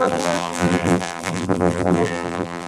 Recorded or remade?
remade